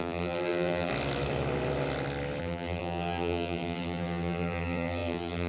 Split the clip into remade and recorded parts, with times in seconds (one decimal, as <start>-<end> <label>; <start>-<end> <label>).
0.0-0.9 remade; 0.9-2.4 recorded; 2.4-5.5 remade